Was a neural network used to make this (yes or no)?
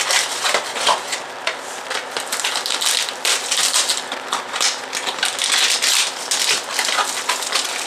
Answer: no